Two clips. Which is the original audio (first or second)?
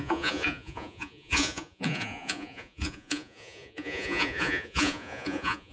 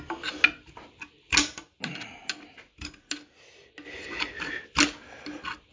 second